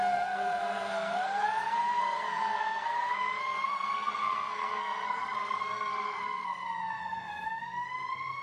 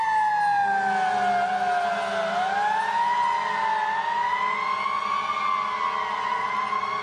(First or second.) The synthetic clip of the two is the first